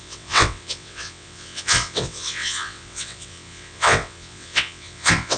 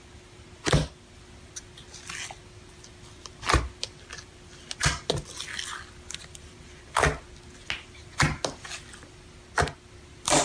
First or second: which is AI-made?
first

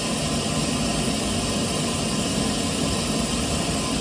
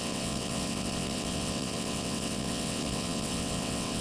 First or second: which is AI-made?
second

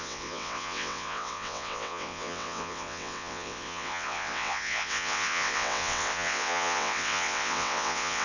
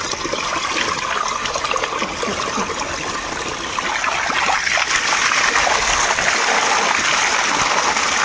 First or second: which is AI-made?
first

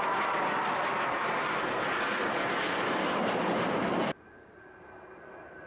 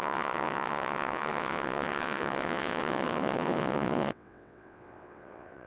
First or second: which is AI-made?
second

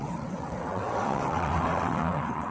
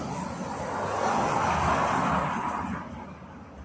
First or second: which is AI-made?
first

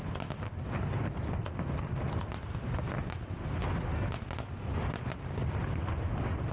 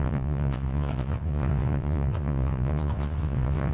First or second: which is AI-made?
second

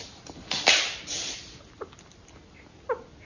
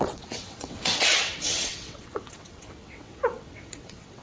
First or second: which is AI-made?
second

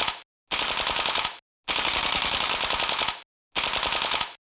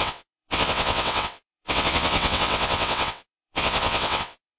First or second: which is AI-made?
second